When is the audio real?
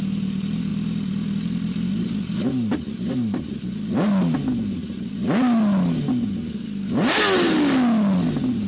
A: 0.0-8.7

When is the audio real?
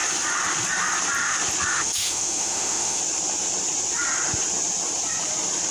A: 0.0-1.7; 3.0-5.7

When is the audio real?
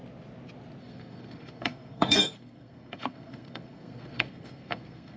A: 0.0-0.8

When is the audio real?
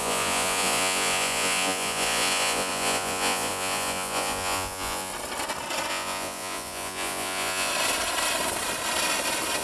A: 5.1-5.9; 7.7-9.6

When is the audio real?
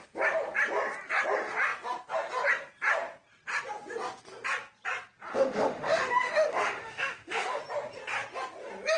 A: 0.0-5.3; 7.6-9.0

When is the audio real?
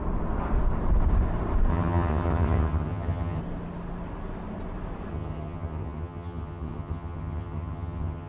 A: 0.0-1.7; 3.4-5.1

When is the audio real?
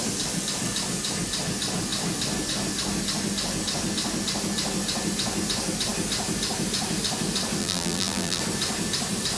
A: 0.0-7.6; 8.4-9.4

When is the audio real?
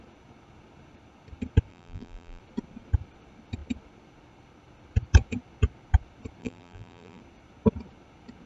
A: 0.0-1.7; 2.4-6.4; 7.2-8.5